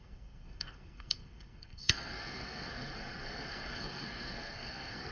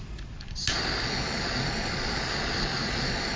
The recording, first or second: second